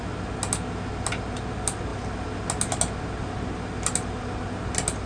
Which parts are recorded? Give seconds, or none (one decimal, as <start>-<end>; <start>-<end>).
0.0-5.1